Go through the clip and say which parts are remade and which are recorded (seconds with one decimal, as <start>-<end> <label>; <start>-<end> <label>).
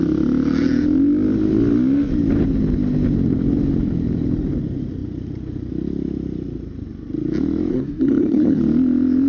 0.0-7.7 recorded; 7.7-8.6 remade; 8.6-9.3 recorded